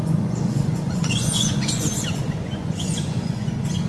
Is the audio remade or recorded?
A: remade